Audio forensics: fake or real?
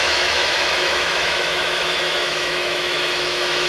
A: fake